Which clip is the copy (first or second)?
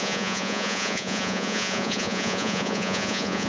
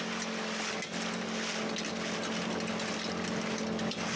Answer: first